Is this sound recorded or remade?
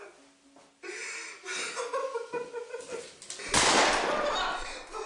recorded